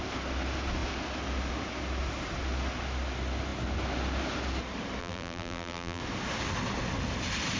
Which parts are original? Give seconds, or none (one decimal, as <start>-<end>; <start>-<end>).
0.0-5.0; 6.0-7.6